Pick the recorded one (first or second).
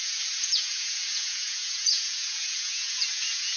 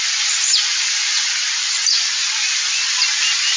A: second